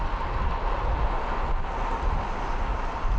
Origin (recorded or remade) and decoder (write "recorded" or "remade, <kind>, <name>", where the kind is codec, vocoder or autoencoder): recorded